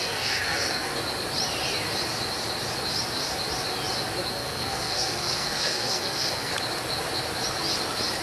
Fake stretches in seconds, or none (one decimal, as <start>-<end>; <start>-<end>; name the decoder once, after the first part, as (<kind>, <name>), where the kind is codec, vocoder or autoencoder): 0.0-0.9 (codec, SNAC); 4.3-6.5